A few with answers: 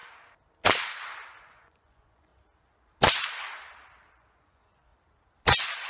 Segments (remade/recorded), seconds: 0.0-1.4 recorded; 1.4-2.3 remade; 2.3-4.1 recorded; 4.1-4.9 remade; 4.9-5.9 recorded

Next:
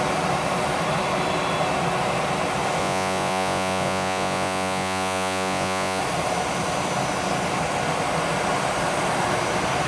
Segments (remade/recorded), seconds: 0.0-2.8 recorded; 2.8-6.0 remade; 6.0-9.9 recorded

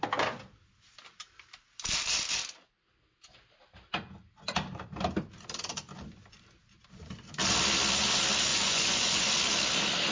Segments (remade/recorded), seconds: 0.0-8.5 recorded; 8.5-9.3 remade; 9.3-10.1 recorded